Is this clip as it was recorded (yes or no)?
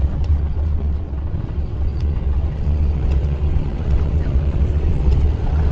no